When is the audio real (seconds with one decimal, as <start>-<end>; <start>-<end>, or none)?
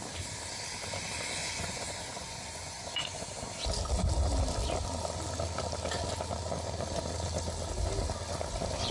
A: 0.0-1.4; 3.2-8.9